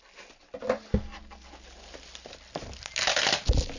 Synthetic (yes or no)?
no